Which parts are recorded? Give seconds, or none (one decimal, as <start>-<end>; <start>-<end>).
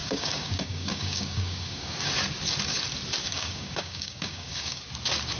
2.1-3.2; 4.8-5.4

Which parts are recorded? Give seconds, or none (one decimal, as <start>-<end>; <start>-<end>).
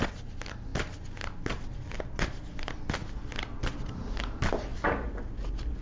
0.0-5.8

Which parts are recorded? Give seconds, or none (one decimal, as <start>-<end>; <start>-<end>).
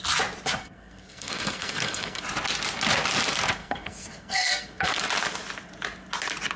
0.0-0.6; 2.2-3.6; 5.0-6.6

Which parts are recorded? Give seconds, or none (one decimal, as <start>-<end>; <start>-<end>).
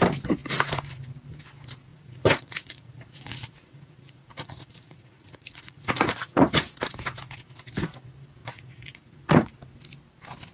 0.0-1.9; 6.7-8.4; 9.5-10.5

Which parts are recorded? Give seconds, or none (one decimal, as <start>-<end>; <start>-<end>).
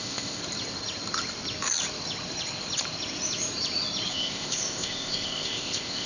0.4-4.1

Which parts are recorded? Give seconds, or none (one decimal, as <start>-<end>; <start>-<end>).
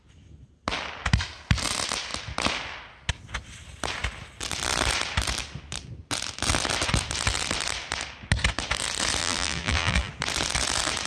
0.0-9.2; 10.1-11.1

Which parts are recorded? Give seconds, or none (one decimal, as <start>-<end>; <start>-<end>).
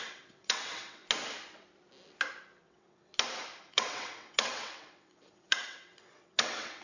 1.0-2.6; 3.1-3.7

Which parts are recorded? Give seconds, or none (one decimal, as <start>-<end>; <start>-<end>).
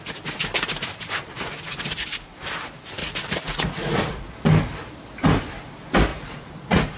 0.0-3.0; 4.3-6.1